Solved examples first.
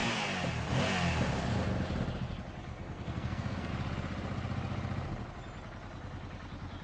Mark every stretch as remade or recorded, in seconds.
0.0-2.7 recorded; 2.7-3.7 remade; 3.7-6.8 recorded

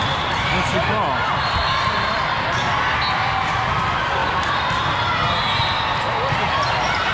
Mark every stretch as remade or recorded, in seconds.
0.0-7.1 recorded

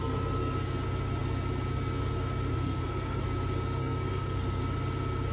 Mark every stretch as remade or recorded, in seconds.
0.0-2.5 recorded; 2.5-3.2 remade; 3.2-3.8 recorded; 3.8-4.6 remade; 4.6-5.3 recorded

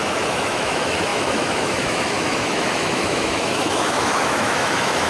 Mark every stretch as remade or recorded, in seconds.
0.0-5.1 remade